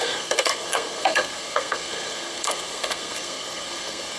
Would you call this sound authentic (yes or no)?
no